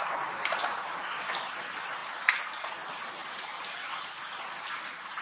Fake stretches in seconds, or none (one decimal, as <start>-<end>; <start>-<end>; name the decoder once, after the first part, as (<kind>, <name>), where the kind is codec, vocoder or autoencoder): none